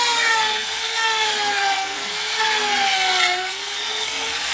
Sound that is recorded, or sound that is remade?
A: remade